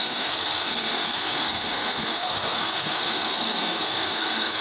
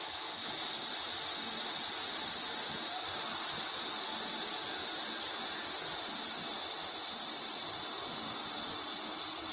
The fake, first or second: first